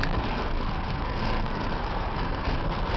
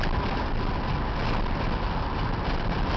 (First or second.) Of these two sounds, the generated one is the first